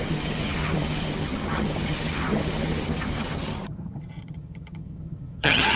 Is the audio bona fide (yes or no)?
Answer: no